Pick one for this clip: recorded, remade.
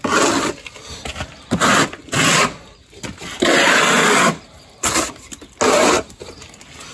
recorded